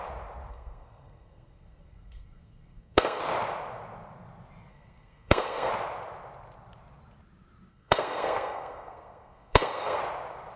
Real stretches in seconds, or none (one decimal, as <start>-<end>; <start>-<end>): 0.0-0.5; 3.2-4.7; 5.7-7.7; 10.0-10.6